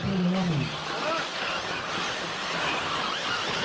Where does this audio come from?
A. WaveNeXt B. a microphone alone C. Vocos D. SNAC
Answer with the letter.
B